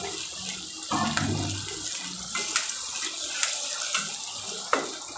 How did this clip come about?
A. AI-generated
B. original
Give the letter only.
B